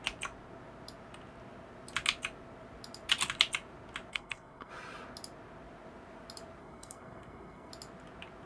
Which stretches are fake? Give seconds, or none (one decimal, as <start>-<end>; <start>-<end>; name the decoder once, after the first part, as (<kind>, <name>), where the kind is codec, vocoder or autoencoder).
4.1-4.7 (codec, SNAC); 6.6-7.7